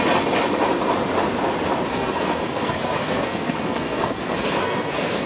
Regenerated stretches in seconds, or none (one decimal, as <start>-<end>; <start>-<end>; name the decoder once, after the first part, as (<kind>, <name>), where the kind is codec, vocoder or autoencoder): 1.9-5.3 (codec, SNAC)